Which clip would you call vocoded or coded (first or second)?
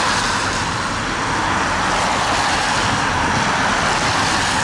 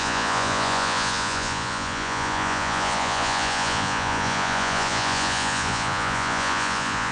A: second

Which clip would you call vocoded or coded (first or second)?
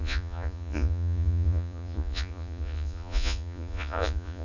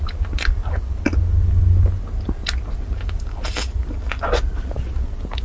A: first